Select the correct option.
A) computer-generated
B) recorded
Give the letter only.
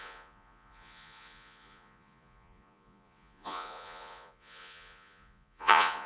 A